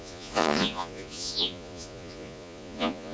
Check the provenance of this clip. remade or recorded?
remade